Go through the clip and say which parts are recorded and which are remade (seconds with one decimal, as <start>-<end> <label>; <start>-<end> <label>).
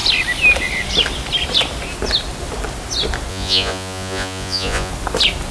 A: 0.0-3.3 recorded; 3.3-4.9 remade; 4.9-5.5 recorded